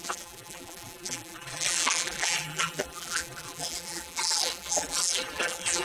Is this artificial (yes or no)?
yes